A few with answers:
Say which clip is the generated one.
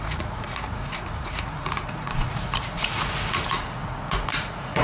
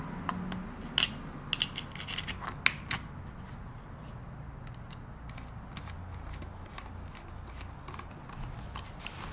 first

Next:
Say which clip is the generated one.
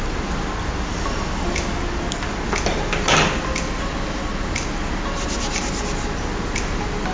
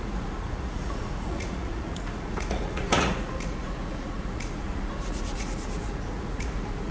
second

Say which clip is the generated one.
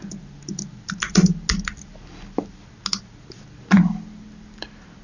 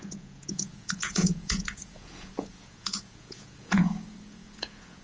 second